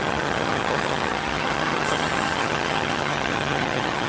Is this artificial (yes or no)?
yes